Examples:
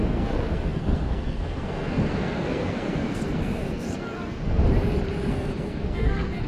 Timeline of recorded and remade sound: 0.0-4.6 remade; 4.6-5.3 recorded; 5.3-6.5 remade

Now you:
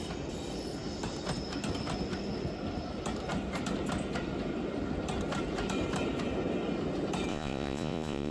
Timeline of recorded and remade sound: 0.0-7.3 recorded; 7.3-8.3 remade